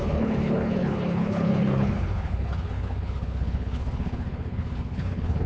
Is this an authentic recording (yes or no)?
no